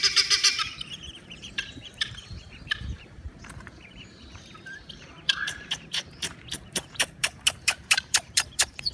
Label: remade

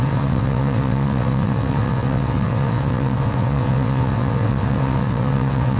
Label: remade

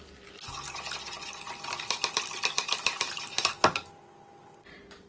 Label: recorded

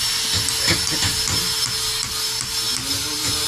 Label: recorded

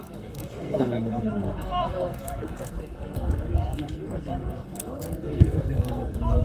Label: remade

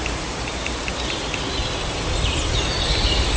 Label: recorded